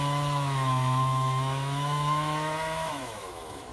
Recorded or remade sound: remade